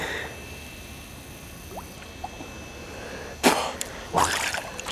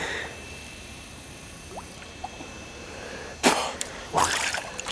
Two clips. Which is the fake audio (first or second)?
second